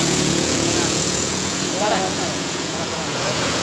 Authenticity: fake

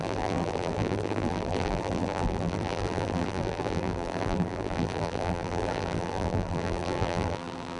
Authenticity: fake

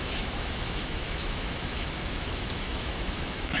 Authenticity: fake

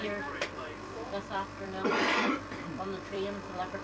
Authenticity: fake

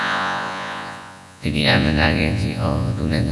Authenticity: fake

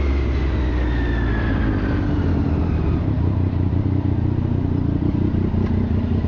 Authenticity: real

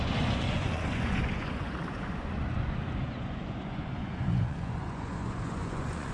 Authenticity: fake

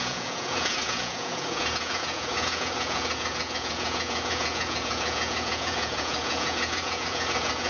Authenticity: fake